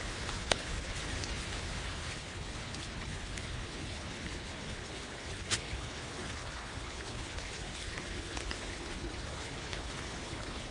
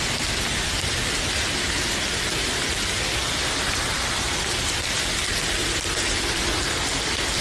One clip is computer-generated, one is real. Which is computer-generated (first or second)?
first